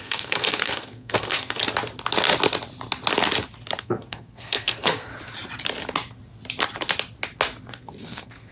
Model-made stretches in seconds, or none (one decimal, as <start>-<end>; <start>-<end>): 0.0-1.6; 3.8-5.1; 7.7-8.5